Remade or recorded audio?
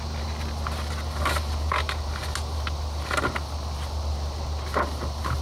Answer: recorded